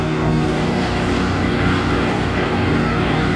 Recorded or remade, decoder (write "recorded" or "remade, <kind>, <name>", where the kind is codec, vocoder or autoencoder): remade, codec, DAC